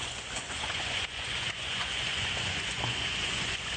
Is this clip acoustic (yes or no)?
no